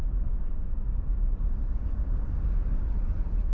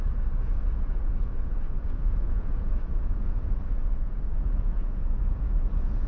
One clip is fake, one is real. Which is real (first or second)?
first